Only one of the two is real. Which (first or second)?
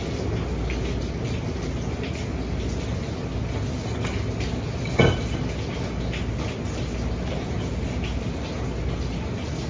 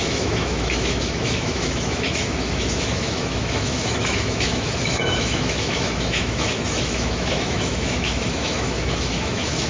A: first